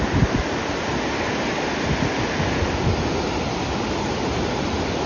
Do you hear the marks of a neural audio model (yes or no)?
no